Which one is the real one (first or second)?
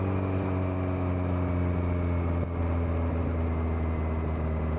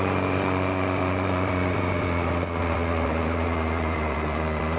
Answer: first